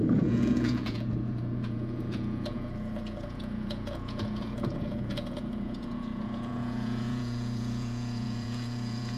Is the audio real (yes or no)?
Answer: no